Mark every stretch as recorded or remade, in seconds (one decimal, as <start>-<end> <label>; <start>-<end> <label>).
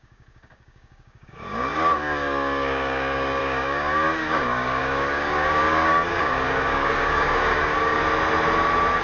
0.0-8.0 remade; 8.0-9.0 recorded